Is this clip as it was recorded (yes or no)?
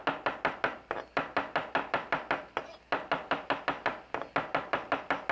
yes